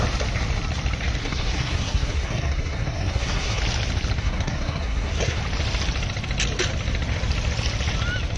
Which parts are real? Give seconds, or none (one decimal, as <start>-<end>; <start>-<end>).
0.0-1.2; 3.6-4.2; 5.4-8.4